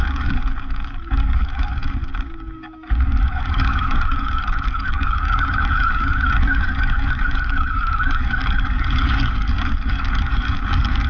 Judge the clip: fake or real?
fake